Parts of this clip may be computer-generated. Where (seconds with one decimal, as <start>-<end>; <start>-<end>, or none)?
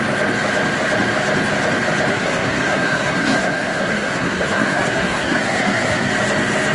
2.1-6.1